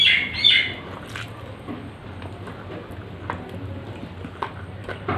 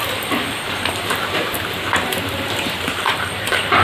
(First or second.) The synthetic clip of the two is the second